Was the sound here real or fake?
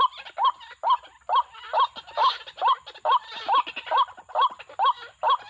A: real